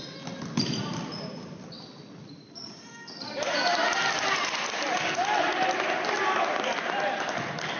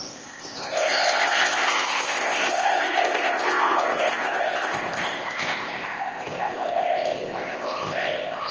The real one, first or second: first